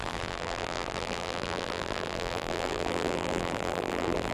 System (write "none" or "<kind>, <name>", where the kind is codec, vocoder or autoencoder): vocoder, BigVGAN v2